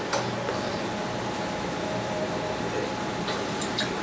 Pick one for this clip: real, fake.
real